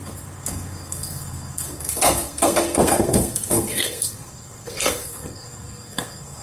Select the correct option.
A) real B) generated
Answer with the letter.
B